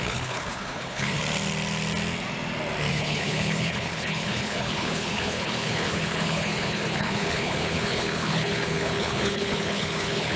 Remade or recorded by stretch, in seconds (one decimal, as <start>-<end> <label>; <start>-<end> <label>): 0.0-1.2 remade; 1.2-2.9 recorded; 2.9-10.4 remade